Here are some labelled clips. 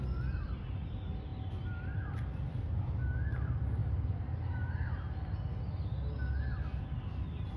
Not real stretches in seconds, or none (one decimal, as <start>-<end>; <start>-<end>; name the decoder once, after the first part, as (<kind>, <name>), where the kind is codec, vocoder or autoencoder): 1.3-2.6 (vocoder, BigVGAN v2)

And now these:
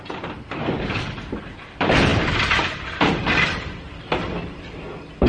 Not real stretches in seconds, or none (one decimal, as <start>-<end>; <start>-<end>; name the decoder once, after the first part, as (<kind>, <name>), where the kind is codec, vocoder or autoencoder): 0.0-5.3 (vocoder, BigVGAN v2)

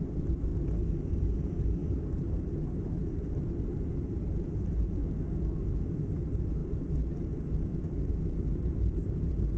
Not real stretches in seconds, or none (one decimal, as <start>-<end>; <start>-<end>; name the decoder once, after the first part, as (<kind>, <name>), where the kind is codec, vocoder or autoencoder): 0.0-0.5 (vocoder, BigVGAN v2); 1.1-5.0; 5.6-9.6